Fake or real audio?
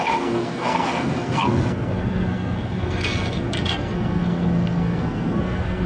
fake